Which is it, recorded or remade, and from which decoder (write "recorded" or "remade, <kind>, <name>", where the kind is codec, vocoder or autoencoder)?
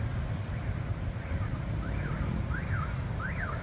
recorded